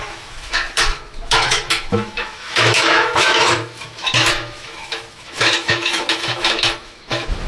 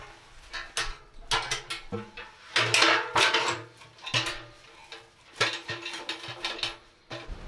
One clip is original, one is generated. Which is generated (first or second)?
first